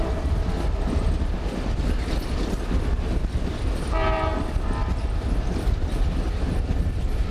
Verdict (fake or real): real